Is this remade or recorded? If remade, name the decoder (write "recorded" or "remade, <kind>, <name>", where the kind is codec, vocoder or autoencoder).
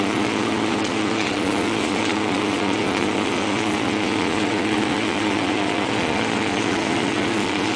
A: remade, vocoder, Vocos